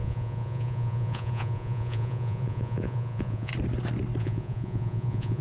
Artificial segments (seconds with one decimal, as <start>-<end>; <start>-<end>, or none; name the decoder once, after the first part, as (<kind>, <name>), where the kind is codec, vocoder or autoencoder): 0.0-3.5 (vocoder, Vocos); 4.2-5.4